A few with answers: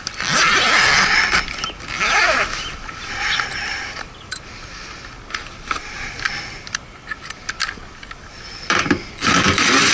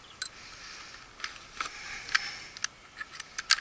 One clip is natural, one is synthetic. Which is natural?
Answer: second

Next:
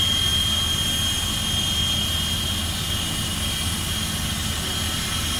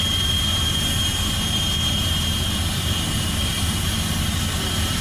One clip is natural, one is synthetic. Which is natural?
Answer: first